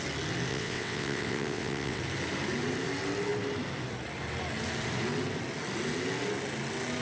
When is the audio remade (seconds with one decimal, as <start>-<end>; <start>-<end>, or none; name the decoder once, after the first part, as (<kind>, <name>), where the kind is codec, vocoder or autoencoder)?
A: 0.5-2.0 (vocoder, WaveNeXt)